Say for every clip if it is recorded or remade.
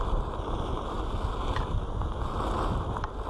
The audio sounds recorded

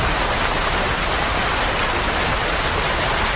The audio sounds recorded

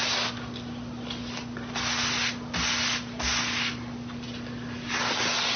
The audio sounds recorded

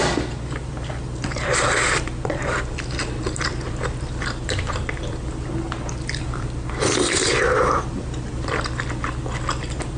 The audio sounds remade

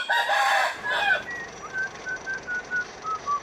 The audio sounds remade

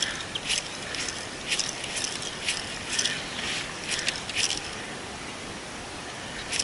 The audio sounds recorded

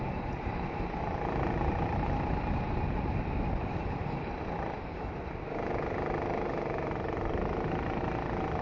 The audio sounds recorded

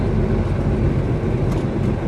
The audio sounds recorded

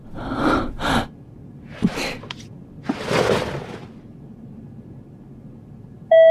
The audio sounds recorded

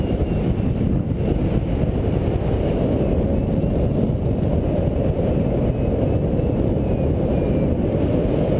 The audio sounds recorded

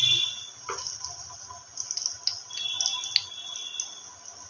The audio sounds recorded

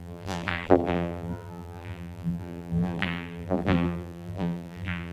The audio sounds remade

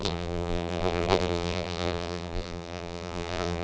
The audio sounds remade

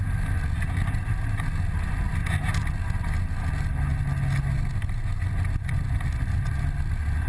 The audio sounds recorded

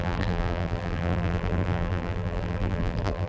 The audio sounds remade